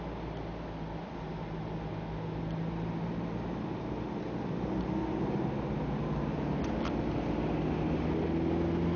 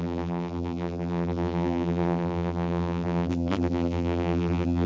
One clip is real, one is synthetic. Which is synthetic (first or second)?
second